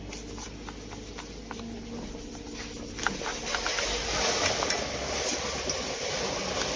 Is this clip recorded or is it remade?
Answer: recorded